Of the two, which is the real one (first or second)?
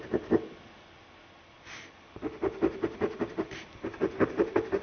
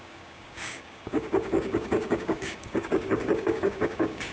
first